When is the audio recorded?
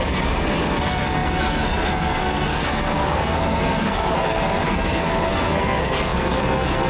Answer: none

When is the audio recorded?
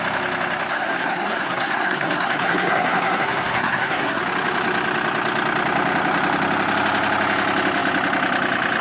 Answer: 0.0-0.7; 4.2-8.8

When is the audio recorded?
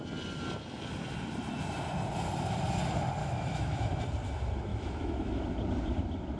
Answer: 0.0-3.2; 4.0-4.7; 5.4-6.4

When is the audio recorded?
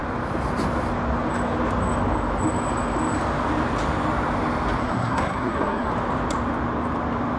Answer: 0.0-4.8; 5.9-7.4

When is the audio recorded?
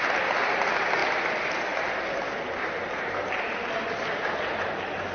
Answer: 0.0-5.1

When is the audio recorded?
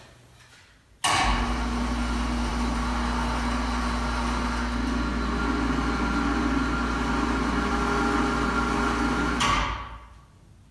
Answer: 0.0-10.7